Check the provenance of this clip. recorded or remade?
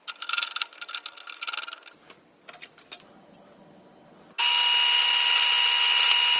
recorded